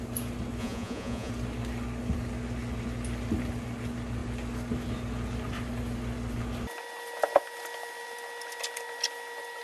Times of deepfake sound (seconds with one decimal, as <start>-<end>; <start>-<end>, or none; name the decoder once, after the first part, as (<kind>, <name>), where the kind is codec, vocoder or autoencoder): 0.6-1.3 (vocoder, Vocos)